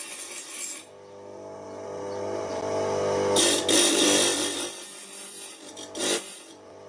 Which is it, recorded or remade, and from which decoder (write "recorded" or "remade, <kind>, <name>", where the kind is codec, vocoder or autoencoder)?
recorded